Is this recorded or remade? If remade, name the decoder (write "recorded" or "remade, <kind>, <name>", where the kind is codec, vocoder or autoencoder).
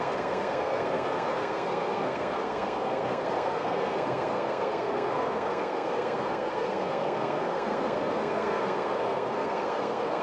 remade, codec, SNAC